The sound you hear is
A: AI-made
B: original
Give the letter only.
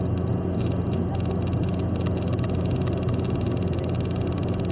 B